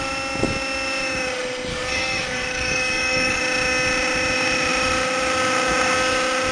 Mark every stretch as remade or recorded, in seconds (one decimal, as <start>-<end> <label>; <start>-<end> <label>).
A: 0.0-1.7 recorded; 1.7-3.4 remade; 3.4-6.5 recorded